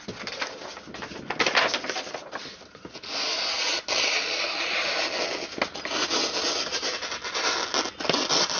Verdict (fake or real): real